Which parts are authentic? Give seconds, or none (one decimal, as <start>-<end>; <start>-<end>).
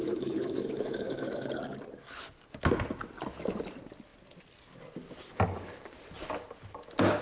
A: 1.5-7.2